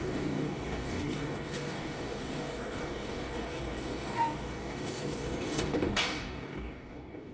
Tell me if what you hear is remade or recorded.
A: remade